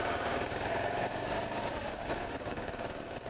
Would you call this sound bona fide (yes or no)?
no